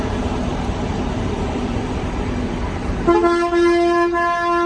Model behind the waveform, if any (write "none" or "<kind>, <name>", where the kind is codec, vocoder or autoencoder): vocoder, BigVGAN v2